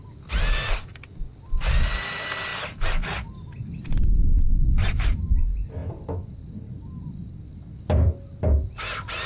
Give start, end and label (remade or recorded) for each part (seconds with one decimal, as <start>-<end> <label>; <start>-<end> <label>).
0.0-9.3 recorded